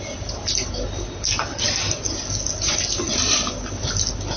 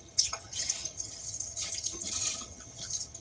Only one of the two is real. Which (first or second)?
first